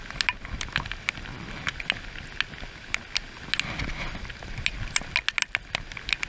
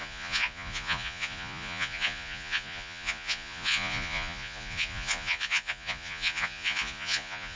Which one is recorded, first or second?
first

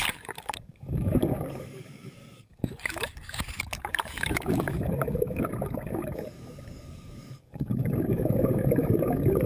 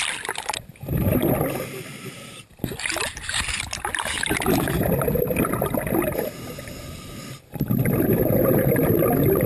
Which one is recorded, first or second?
second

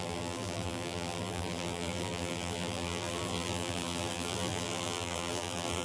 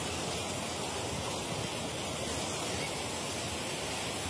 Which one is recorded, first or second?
second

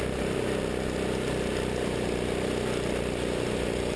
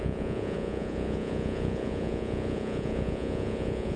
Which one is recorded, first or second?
first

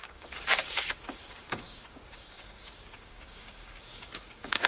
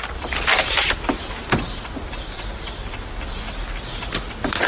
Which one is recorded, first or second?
second